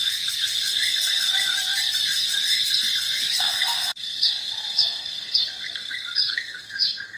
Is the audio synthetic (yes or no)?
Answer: yes